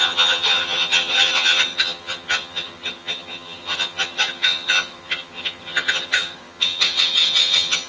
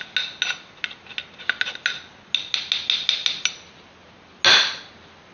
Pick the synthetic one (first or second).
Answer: first